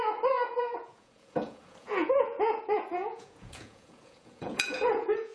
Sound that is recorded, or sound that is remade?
remade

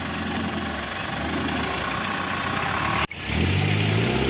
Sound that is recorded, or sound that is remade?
recorded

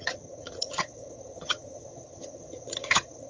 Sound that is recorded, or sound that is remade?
remade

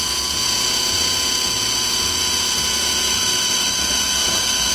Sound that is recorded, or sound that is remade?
remade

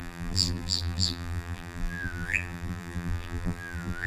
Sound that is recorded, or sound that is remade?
remade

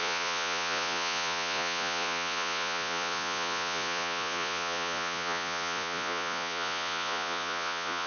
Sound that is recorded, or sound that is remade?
remade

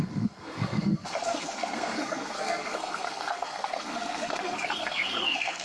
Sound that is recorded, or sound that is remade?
remade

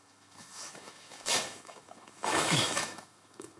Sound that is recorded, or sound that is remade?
remade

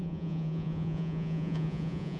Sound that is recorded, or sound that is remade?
remade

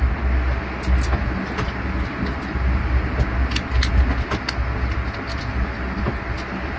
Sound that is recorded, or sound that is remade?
recorded